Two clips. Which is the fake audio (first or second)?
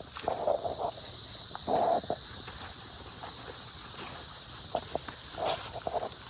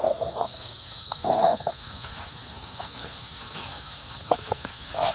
second